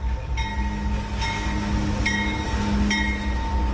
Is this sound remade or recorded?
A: recorded